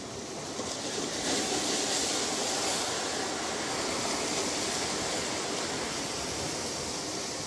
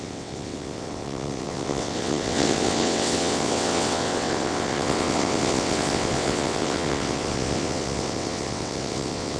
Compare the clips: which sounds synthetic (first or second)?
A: second